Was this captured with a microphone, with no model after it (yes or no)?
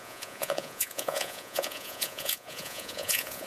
no